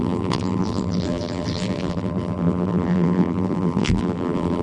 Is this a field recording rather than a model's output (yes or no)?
no